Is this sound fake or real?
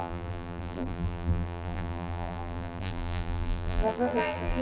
fake